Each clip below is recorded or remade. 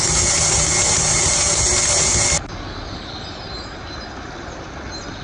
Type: recorded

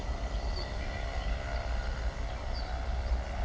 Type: recorded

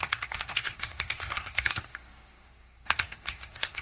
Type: remade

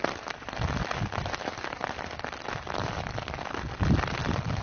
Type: recorded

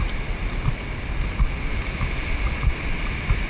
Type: recorded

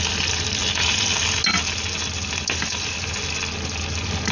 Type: recorded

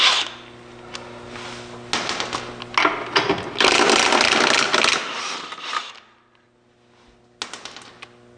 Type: recorded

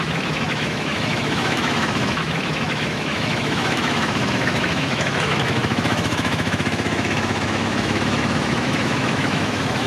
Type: remade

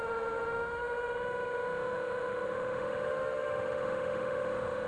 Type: remade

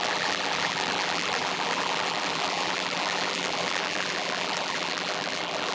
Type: remade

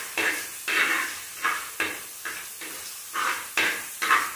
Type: recorded